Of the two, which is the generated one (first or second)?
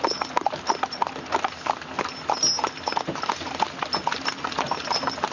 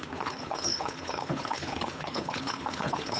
second